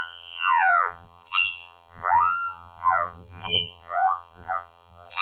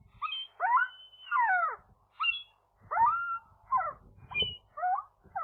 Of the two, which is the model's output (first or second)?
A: first